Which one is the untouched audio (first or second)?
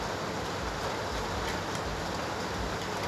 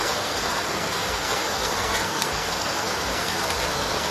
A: first